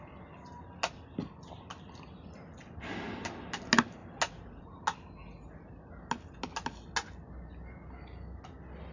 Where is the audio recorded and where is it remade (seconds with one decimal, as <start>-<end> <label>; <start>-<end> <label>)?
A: 0.0-8.9 recorded